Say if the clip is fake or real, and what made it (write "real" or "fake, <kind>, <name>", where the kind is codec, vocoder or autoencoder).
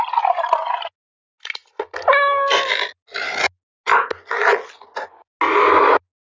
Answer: real